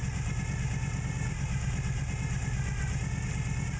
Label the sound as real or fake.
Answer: real